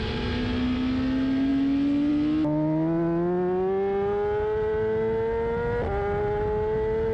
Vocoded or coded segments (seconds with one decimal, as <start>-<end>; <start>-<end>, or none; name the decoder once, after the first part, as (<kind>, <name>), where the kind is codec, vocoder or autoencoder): none